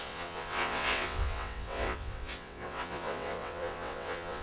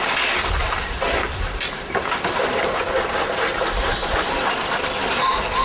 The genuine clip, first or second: second